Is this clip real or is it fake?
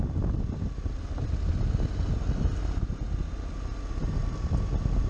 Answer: real